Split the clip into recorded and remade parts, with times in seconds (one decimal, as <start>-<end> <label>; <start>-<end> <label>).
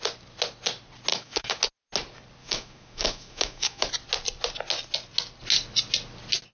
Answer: 0.0-1.1 recorded; 1.1-1.6 remade; 1.6-2.4 recorded; 2.4-3.9 remade; 3.9-6.5 recorded